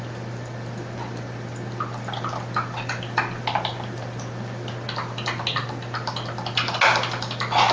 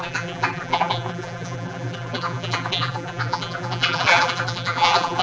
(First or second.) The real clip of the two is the first